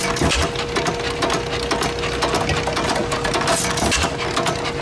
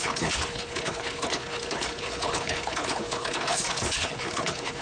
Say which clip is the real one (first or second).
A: first